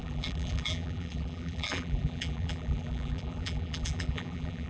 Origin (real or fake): fake